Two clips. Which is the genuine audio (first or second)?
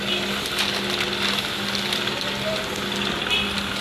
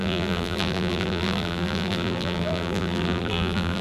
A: first